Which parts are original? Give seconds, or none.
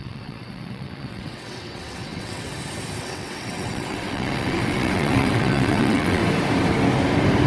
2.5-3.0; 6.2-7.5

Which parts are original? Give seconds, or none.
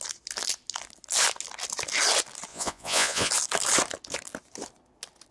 0.0-2.5; 3.3-5.3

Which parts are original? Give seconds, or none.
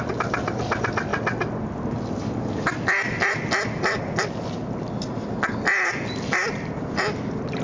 0.0-7.6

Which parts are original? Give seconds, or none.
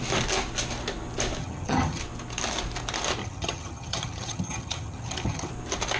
0.0-1.4; 2.0-3.2; 5.5-6.0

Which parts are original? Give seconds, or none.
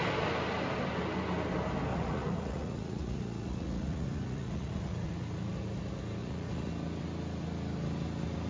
0.0-1.9; 5.5-6.2; 6.7-8.5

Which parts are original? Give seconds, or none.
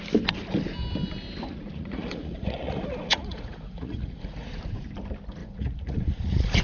0.0-1.5; 4.6-5.4